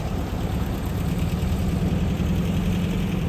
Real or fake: real